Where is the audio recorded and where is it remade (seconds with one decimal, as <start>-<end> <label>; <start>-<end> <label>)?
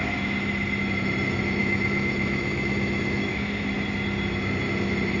0.0-1.6 recorded; 1.6-3.7 remade; 3.7-5.2 recorded